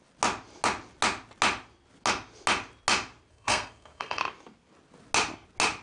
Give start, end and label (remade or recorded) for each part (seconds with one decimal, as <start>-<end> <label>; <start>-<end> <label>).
0.0-3.3 recorded; 3.3-4.2 remade; 4.2-5.8 recorded